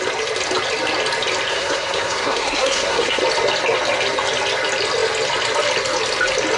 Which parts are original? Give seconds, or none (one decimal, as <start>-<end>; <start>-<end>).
0.0-1.5; 3.2-6.6